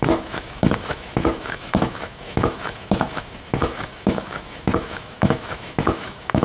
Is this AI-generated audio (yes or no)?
yes